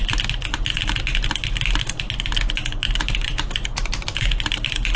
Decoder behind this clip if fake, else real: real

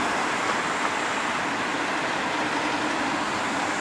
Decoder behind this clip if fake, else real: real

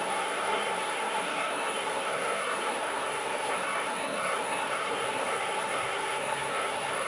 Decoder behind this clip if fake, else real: fake, codec, SNAC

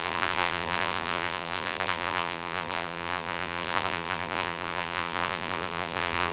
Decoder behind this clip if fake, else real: fake, vocoder, BigVGAN v2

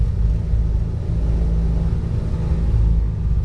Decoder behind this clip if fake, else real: real